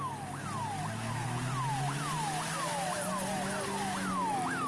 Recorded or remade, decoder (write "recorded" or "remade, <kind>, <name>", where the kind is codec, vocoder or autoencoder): recorded